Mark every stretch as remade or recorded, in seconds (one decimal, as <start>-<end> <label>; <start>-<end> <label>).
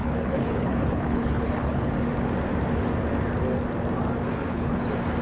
0.0-1.9 remade; 1.9-4.3 recorded; 4.3-4.8 remade; 4.8-5.2 recorded